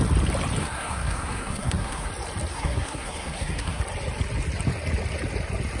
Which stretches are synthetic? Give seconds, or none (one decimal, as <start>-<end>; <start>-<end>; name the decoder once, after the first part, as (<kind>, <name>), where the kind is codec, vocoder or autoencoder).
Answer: 0.6-2.1 (codec, SNAC); 2.5-3.8